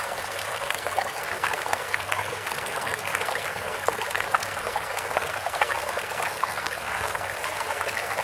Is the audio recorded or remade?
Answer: remade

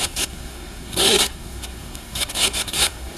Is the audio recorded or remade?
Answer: remade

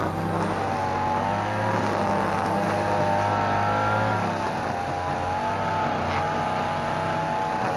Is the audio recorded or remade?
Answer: recorded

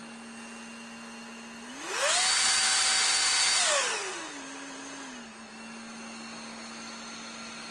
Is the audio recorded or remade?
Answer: recorded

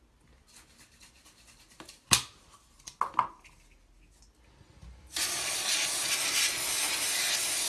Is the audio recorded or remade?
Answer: recorded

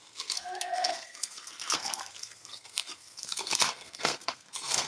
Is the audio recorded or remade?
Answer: remade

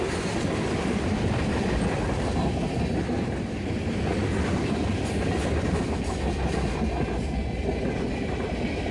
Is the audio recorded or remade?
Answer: recorded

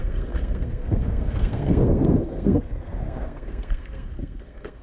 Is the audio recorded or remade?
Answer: remade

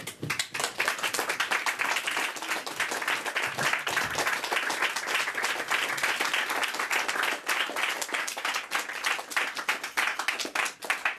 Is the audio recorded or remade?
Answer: recorded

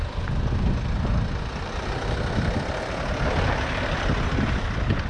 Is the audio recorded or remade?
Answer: recorded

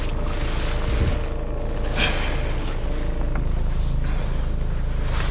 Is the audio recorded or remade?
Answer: recorded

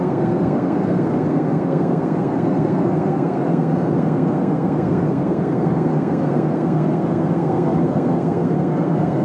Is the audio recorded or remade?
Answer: remade